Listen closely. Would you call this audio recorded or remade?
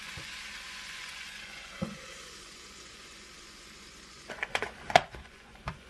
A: remade